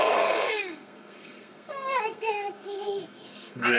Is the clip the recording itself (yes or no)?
no